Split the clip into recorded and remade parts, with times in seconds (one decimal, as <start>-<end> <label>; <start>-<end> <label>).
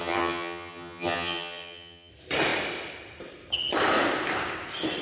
0.0-2.1 remade; 2.1-5.0 recorded